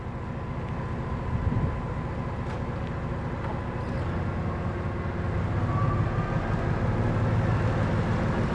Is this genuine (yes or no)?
yes